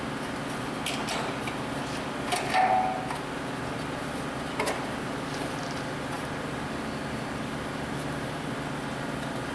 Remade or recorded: recorded